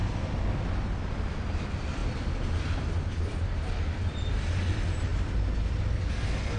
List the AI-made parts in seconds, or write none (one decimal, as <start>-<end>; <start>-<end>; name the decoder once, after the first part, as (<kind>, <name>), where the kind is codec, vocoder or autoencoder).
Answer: none